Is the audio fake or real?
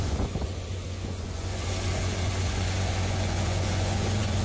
fake